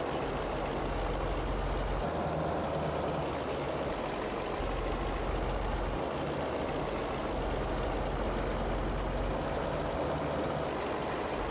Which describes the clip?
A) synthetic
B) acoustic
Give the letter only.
B